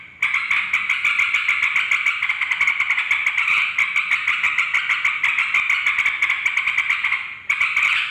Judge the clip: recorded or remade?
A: recorded